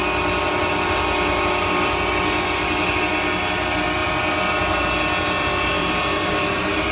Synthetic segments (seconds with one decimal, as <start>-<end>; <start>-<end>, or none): 5.8-6.9